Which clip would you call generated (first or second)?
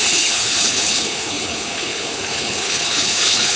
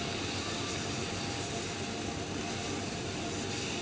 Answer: first